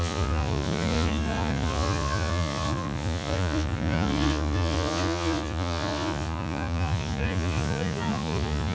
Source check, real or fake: fake